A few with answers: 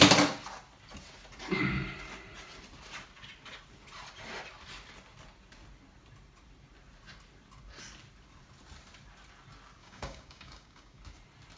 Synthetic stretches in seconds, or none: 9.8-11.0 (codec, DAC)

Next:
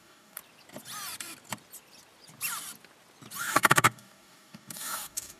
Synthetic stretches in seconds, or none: 0.0-0.4 (codec, DAC); 3.4-5.4

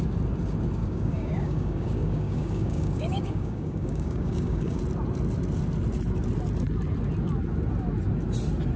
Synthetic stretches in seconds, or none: 0.8-4.8 (codec, DAC)

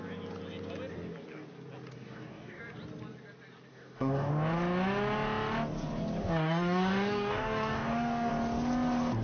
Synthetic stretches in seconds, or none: 1.9-2.6 (codec, DAC); 3.7-4.3; 6.2-8.3